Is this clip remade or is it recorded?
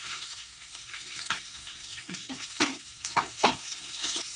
remade